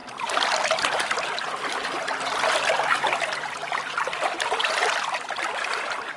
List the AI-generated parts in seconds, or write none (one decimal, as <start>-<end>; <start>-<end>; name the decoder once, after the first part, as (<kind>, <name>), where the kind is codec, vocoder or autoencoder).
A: none